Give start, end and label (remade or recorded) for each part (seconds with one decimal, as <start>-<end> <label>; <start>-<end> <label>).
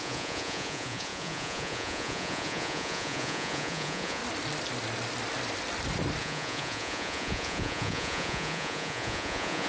0.0-4.2 remade; 4.2-6.2 recorded; 6.2-9.7 remade